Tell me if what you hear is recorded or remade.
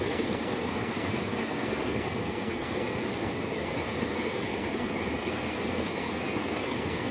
remade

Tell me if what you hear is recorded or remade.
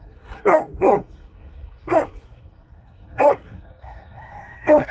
remade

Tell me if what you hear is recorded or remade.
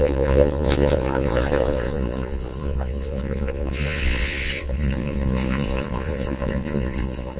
remade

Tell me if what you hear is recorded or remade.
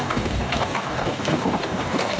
remade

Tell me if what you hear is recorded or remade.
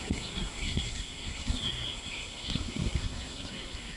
remade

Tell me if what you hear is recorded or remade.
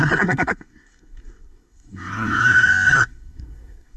remade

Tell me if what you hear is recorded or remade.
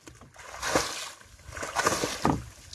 recorded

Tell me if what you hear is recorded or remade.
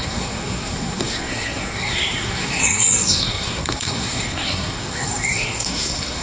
remade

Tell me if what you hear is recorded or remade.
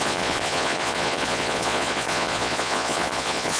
remade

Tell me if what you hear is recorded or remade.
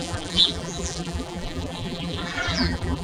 remade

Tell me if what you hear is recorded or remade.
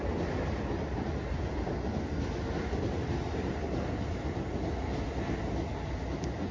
recorded